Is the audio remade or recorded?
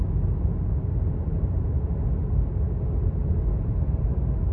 recorded